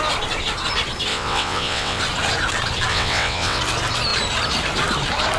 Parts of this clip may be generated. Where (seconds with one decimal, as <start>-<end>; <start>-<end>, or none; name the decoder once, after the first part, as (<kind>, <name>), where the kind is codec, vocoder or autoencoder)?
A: 1.1-2.0 (vocoder, WaveNeXt); 2.9-3.6